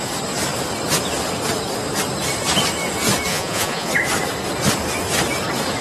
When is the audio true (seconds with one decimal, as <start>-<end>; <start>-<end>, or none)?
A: 0.0-3.3; 3.9-5.8